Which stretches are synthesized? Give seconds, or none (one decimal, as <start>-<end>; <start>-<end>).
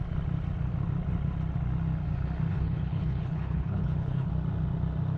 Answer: 2.5-4.3